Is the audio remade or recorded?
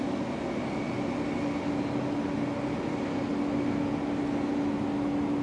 recorded